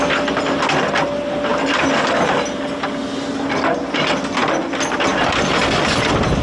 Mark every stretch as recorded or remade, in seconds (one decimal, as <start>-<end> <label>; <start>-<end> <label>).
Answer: 0.0-6.4 recorded